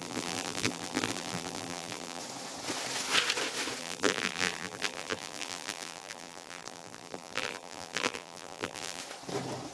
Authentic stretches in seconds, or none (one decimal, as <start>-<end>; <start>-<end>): 2.2-3.8; 9.0-9.7